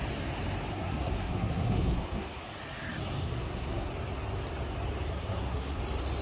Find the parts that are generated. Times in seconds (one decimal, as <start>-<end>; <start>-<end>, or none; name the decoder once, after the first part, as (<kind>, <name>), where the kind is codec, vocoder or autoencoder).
0.7-2.4 (codec, SNAC); 3.2-3.9; 5.1-5.8